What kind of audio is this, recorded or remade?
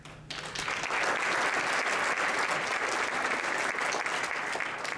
recorded